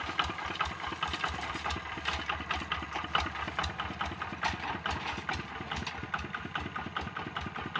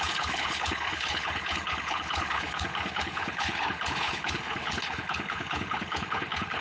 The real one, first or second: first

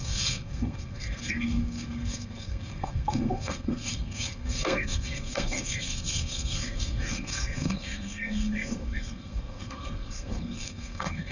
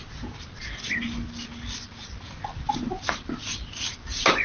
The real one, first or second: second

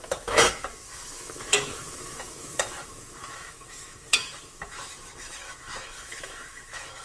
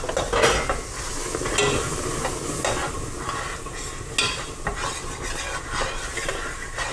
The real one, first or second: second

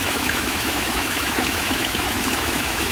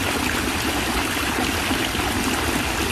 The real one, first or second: second